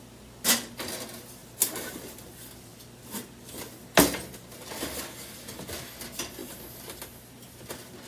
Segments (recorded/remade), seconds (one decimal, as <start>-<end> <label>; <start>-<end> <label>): 0.0-1.4 recorded; 1.4-2.3 remade; 2.3-6.4 recorded; 6.4-7.0 remade; 7.0-8.1 recorded